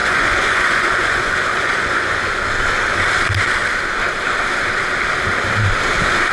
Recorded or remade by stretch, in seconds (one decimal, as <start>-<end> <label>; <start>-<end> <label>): 0.0-2.4 remade; 2.4-6.3 recorded